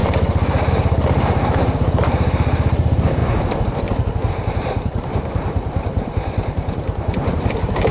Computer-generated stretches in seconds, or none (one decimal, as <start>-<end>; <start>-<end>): 0.0-3.2; 4.3-7.9